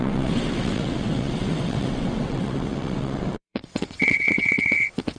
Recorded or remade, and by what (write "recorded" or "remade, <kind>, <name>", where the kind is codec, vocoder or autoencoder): remade, vocoder, WaveNeXt